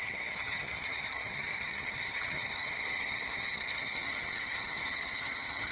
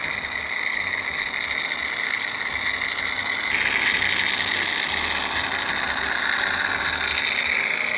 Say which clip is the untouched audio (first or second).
second